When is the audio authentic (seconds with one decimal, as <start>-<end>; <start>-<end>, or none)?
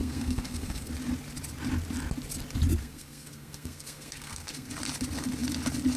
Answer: 0.9-2.8; 4.7-6.0